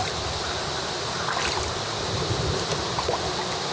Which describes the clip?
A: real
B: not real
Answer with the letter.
A